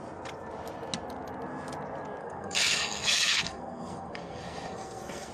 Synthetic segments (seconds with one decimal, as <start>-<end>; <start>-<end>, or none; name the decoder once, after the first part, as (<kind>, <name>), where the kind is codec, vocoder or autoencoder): 2.2-5.3 (codec, SNAC)